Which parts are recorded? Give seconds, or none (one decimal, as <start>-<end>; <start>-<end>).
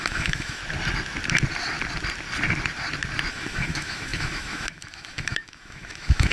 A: 0.6-3.3